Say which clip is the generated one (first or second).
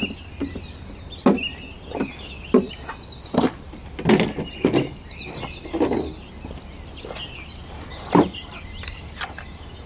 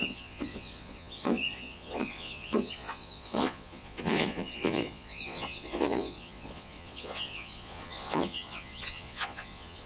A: second